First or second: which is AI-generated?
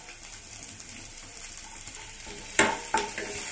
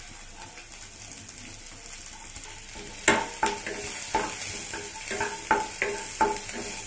first